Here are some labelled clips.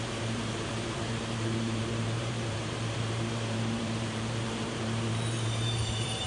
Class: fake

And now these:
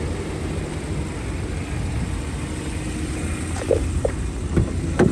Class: real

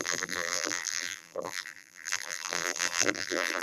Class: fake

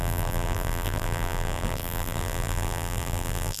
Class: fake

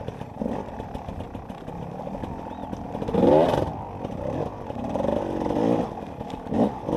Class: real